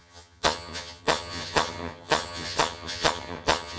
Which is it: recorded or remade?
remade